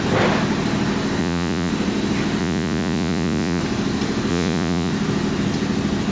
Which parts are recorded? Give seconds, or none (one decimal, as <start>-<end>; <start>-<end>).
0.0-1.2; 1.7-2.4; 3.6-4.3; 4.9-6.1